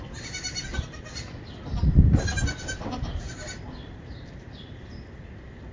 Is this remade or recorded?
recorded